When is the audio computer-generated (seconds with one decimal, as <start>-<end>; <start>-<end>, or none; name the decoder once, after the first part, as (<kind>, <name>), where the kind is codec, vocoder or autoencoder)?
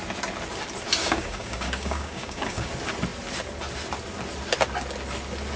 1.0-2.7 (codec, DAC)